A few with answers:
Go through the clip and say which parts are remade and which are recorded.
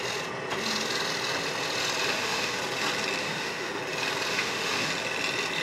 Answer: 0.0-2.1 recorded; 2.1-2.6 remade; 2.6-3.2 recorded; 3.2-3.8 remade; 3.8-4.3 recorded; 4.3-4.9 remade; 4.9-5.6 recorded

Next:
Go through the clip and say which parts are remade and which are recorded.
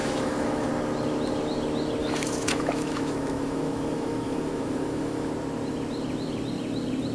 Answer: 0.0-0.7 remade; 0.7-2.0 recorded; 2.0-5.3 remade; 5.3-7.1 recorded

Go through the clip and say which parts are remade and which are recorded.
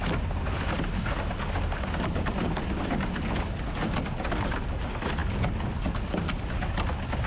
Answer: 0.0-7.3 recorded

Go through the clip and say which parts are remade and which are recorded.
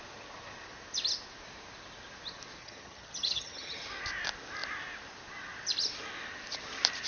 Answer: 0.0-2.6 recorded; 2.6-3.8 remade; 3.8-7.1 recorded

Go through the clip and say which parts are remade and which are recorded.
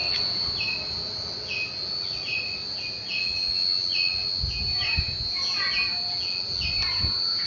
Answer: 0.0-7.5 recorded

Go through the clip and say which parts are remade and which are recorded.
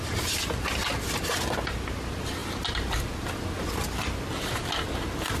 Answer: 0.0-5.4 recorded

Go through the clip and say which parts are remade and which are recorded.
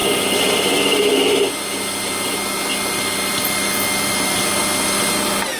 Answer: 0.0-5.6 recorded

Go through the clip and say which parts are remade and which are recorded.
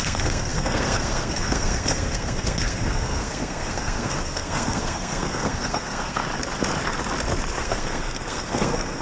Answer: 0.0-6.2 remade; 6.2-7.6 recorded; 7.6-9.0 remade